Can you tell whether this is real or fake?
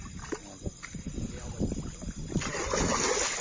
real